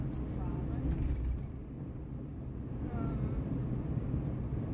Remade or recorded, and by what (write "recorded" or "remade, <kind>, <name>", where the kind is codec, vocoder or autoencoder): recorded